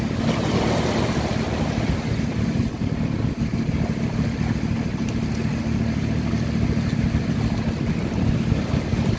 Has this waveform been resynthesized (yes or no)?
no